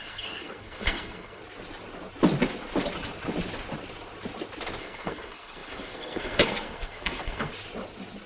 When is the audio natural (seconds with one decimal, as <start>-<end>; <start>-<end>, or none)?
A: 1.4-4.8; 7.5-8.3